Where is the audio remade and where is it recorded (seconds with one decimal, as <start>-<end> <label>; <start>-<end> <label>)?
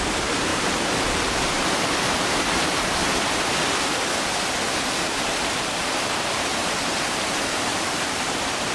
0.0-3.0 remade; 3.0-5.2 recorded; 5.2-8.7 remade